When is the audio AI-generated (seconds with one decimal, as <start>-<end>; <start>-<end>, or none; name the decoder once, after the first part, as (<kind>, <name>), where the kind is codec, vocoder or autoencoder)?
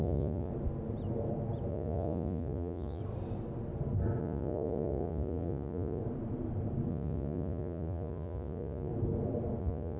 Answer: 0.0-0.5 (vocoder, Vocos); 1.7-3.0; 4.2-6.0; 6.9-8.9; 9.6-10.0